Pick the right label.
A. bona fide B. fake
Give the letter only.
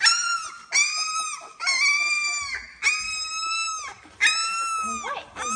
A